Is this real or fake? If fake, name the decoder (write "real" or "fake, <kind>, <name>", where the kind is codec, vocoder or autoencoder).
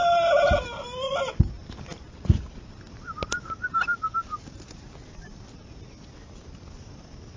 real